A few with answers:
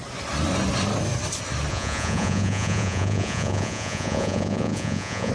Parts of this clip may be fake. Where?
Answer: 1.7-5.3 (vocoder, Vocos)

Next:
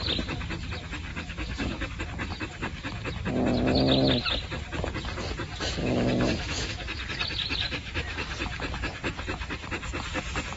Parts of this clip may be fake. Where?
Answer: 1.1-2.0 (codec, DAC); 5.8-6.7

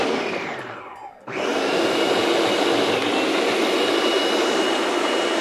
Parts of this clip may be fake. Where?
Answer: 0.0-2.3 (vocoder, BigVGAN v2); 4.4-5.4

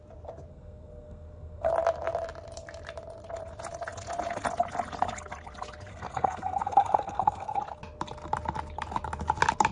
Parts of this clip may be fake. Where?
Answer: 0.5-1.7 (codec, SNAC); 5.9-7.6

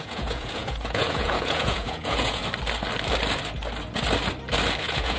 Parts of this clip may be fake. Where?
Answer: 0.0-2.4 (vocoder, Vocos); 4.8-5.2

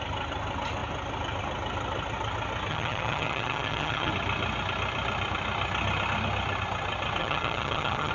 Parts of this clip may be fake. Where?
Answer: 2.7-4.1 (vocoder, HiFi-GAN); 7.2-8.1

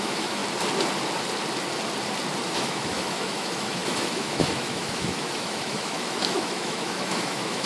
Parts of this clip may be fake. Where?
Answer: 0.0-0.4 (autoencoder, DAC-VAE); 2.5-7.7